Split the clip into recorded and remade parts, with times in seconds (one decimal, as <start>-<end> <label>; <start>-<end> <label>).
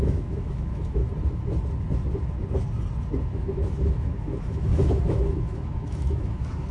0.0-1.0 remade; 1.0-3.2 recorded; 3.2-6.7 remade